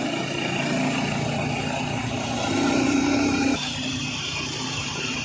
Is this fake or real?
fake